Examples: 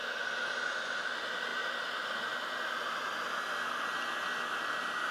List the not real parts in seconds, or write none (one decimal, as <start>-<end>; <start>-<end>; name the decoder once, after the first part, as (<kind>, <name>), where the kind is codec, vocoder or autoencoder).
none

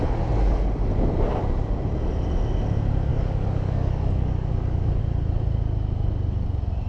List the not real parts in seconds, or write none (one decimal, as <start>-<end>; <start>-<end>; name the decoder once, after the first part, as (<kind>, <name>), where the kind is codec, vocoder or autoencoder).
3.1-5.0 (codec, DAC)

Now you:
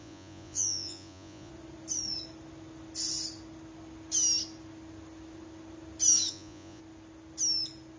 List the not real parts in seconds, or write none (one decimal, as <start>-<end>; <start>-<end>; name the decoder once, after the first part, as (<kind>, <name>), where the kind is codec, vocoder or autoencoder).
0.0-1.5 (vocoder, Vocos); 6.3-6.8

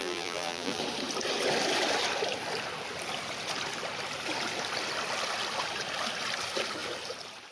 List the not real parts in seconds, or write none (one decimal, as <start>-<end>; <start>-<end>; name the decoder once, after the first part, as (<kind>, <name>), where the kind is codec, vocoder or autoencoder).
0.0-0.8 (vocoder, BigVGAN v2)